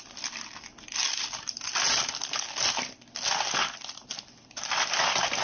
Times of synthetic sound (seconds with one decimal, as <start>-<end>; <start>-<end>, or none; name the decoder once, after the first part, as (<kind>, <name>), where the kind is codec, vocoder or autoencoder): none